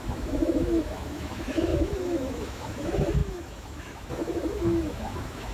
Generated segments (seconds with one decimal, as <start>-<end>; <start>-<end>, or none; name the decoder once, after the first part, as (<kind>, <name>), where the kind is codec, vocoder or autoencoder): 0.0-5.5 (autoencoder, DAC-VAE)